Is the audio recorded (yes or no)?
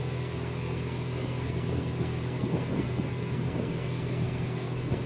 no